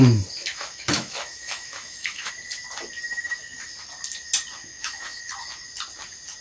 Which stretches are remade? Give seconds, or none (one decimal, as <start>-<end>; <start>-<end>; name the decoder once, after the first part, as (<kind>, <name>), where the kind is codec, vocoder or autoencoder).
0.4-2.3 (autoencoder, DAC-VAE); 3.1-3.7; 4.7-5.2